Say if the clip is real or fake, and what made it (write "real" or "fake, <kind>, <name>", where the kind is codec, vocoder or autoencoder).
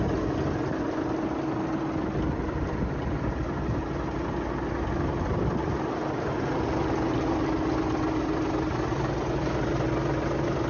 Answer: real